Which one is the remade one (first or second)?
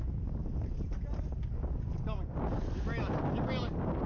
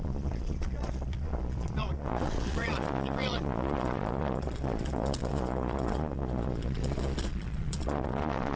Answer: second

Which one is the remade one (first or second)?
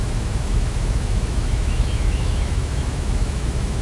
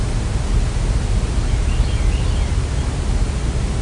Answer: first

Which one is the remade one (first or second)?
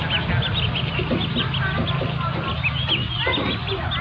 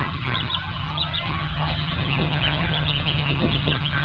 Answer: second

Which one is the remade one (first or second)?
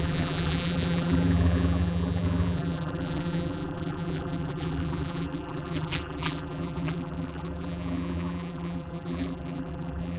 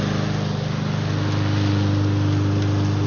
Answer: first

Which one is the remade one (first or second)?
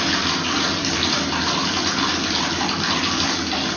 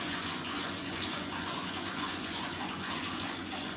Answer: second